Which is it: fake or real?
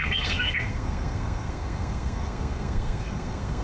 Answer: fake